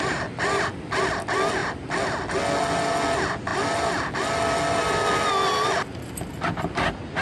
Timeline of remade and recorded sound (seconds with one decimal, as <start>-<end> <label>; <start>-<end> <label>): 0.0-7.2 recorded